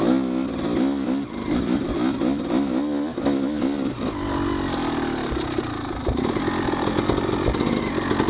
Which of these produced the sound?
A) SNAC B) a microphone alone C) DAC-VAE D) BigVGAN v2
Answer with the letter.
B